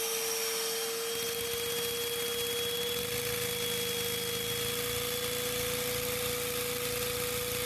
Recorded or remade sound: recorded